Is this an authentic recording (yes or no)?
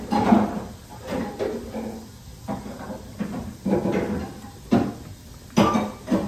yes